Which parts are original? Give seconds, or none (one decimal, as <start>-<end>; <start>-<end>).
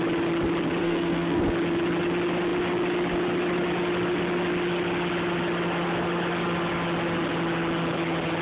0.0-0.8; 1.4-8.4